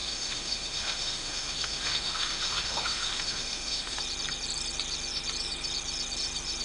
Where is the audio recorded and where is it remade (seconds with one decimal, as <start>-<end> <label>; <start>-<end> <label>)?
0.0-4.0 remade; 4.0-6.6 recorded